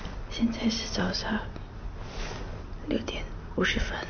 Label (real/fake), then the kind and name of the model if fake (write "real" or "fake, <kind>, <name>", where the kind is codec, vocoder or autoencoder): real